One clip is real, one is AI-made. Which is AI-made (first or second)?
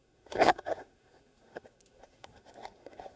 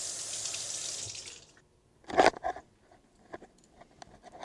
first